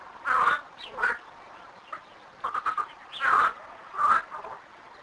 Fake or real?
real